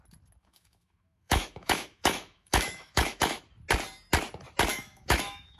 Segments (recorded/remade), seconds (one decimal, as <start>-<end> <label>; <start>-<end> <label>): 0.0-0.4 recorded; 0.4-3.4 remade; 3.4-4.7 recorded; 4.7-5.6 remade